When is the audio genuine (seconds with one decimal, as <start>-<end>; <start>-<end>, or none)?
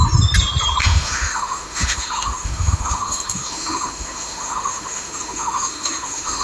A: 0.0-0.8